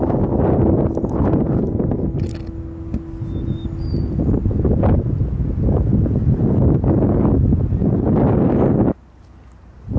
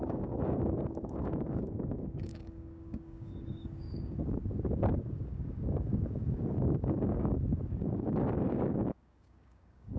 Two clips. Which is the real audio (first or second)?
first